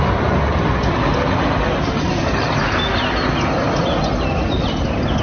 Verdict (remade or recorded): recorded